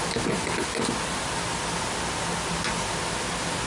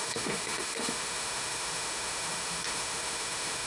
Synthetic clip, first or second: second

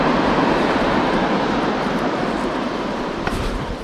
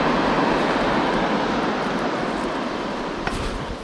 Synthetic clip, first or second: first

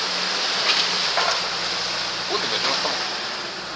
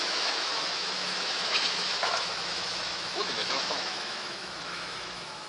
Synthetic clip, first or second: second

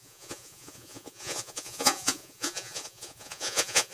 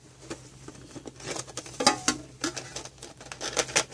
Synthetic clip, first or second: first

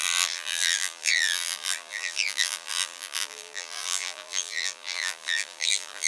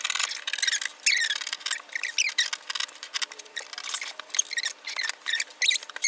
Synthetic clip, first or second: first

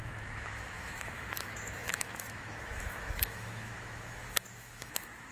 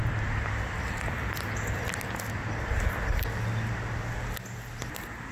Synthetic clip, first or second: first